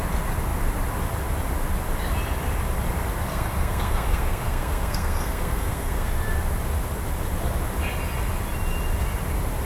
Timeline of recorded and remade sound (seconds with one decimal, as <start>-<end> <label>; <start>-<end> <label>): 0.0-3.3 recorded; 3.3-6.1 remade; 6.1-9.7 recorded